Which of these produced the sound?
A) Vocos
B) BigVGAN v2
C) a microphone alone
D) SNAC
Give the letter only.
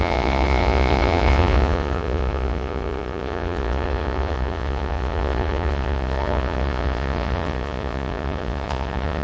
A